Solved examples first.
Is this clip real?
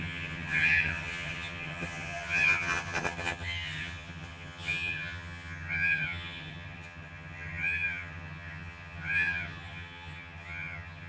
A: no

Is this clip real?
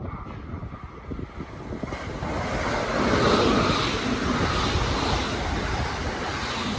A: yes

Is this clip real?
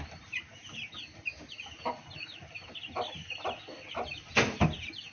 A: yes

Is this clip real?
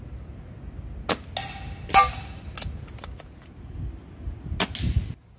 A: yes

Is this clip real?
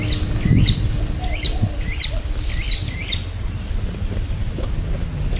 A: yes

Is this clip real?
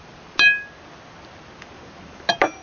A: yes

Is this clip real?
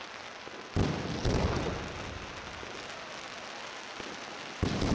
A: yes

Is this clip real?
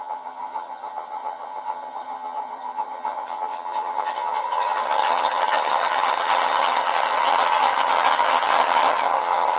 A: no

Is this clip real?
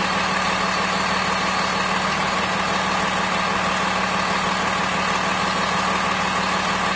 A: yes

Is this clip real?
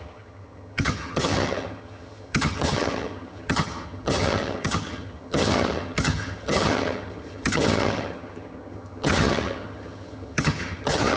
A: no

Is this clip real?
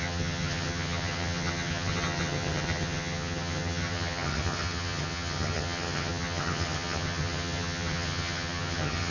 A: no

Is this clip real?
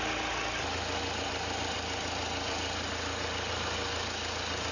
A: yes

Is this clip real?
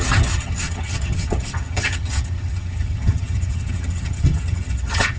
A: no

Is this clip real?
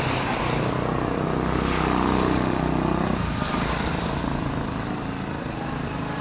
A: yes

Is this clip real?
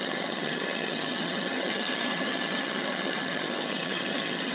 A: no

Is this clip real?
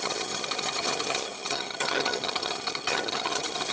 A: no